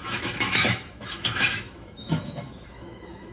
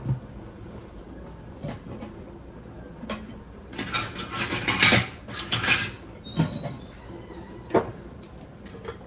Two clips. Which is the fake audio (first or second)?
first